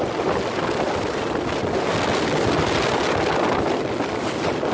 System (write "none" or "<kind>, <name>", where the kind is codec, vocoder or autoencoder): none